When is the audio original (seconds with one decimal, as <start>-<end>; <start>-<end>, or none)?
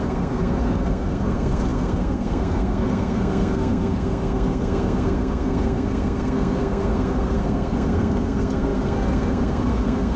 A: none